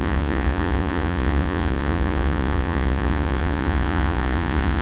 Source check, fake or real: fake